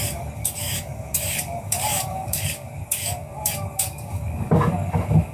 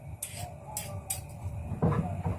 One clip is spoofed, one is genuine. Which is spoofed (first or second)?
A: first